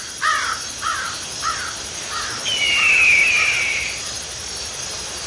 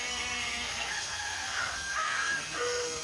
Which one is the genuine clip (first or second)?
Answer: first